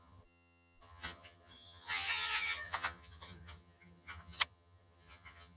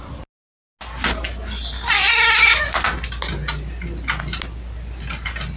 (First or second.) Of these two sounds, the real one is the second